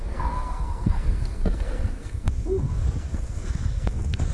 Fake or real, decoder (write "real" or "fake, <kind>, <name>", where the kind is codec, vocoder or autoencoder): fake, codec, SNAC